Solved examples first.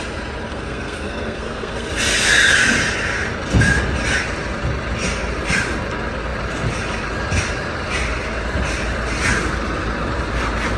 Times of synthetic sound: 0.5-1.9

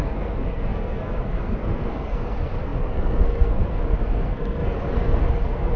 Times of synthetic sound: 0.0-5.8

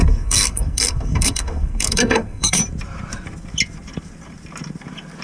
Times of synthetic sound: 0.0-2.6

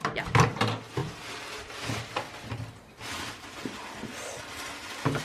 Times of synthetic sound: none